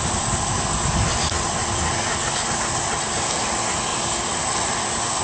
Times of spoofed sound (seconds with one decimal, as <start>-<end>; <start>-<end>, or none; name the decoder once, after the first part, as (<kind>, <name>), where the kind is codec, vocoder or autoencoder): none